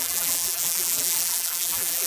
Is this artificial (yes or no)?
yes